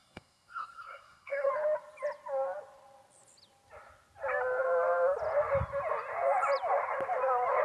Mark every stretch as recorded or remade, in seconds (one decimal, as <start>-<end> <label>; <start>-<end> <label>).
0.0-1.5 remade; 1.5-7.6 recorded

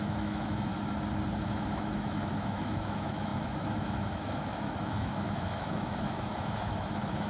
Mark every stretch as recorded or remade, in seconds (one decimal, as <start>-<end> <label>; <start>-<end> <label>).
0.0-0.7 remade; 0.7-1.4 recorded; 1.4-7.3 remade

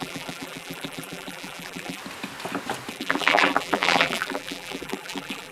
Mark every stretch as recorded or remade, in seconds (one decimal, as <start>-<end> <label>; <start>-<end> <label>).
0.0-2.0 remade; 2.0-2.9 recorded; 2.9-5.5 remade

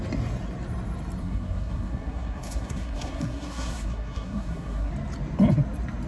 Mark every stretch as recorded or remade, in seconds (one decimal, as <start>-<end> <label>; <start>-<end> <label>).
0.0-1.2 recorded; 1.2-4.9 remade; 4.9-6.1 recorded

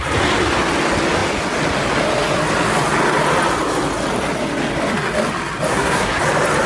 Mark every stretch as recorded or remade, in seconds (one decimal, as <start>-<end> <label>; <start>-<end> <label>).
0.0-5.7 recorded; 5.7-6.2 remade; 6.2-6.7 recorded